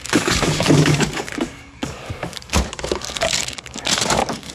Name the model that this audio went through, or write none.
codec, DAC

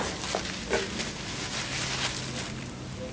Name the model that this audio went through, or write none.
none